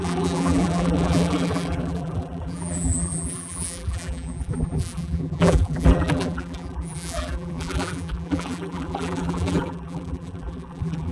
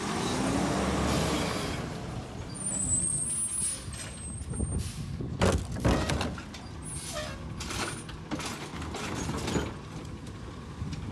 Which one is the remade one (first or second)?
first